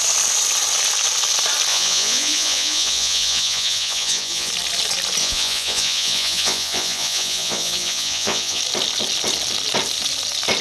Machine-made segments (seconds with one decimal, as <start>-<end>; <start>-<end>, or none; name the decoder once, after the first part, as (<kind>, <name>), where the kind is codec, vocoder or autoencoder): 1.7-4.5 (vocoder, Vocos); 5.2-8.6